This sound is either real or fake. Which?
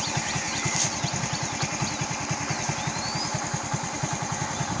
real